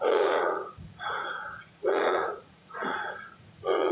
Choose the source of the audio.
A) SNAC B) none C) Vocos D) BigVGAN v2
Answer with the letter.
C